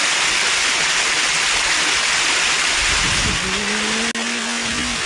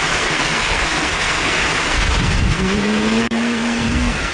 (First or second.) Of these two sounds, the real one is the first